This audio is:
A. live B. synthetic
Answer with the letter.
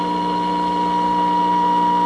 B